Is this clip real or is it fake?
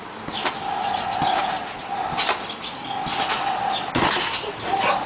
real